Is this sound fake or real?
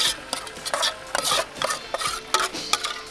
real